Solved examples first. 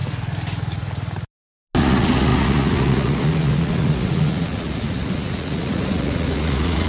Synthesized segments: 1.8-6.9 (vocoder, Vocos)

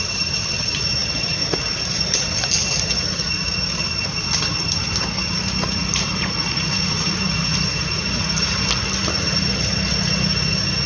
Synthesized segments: none

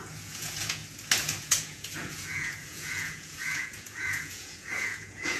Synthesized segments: 0.0-0.8 (vocoder, Vocos); 1.4-5.4

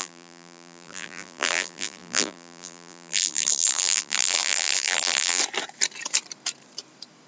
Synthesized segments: 0.0-5.4 (vocoder, BigVGAN v2)

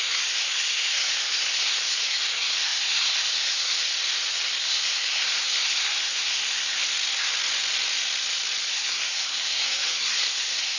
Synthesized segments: 0.0-3.9 (codec, SNAC); 4.6-6.8; 8.7-10.8

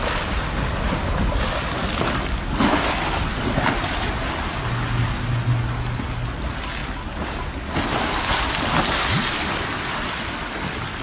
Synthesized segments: none